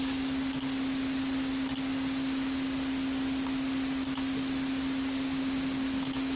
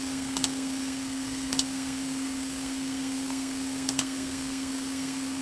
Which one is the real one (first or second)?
first